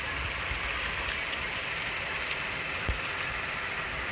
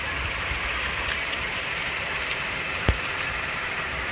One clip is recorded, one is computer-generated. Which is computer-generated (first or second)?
second